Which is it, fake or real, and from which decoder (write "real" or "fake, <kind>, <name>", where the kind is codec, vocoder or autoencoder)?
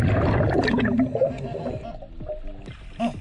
real